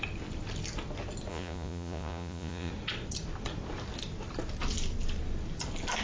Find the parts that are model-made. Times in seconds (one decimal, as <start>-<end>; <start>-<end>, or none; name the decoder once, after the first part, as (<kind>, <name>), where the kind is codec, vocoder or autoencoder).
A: 1.3-2.7 (vocoder, Vocos)